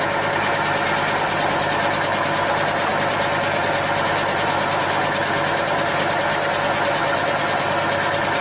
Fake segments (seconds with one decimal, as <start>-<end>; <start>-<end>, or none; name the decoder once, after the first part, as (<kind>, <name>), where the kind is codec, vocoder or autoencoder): none